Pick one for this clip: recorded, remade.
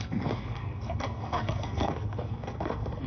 remade